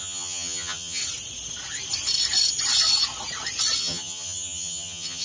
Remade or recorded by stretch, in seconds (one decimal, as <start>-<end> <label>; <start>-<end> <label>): 0.0-1.0 remade; 1.0-3.8 recorded; 3.8-5.2 remade